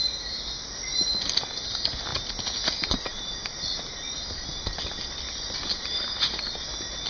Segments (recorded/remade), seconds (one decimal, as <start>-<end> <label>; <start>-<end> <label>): 0.0-7.1 recorded